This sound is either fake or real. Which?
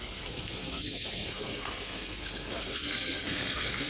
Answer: fake